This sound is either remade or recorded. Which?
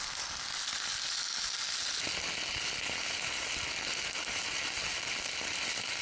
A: recorded